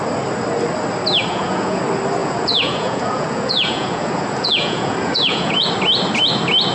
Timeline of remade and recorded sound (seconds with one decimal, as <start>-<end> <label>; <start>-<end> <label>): 0.0-1.3 recorded; 1.3-1.8 remade; 1.8-2.2 recorded; 2.2-5.7 remade; 5.7-6.7 recorded